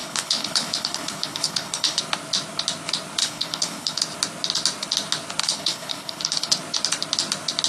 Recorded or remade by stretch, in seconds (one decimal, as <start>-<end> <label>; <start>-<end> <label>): 0.0-2.0 remade; 2.0-3.2 recorded; 3.2-4.0 remade; 4.0-5.4 recorded; 5.4-6.6 remade; 6.6-7.7 recorded